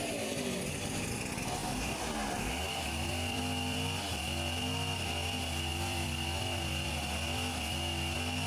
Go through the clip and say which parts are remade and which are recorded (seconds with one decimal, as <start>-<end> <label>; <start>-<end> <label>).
0.0-1.6 recorded; 1.6-3.4 remade; 3.4-5.7 recorded; 5.7-6.9 remade; 6.9-8.5 recorded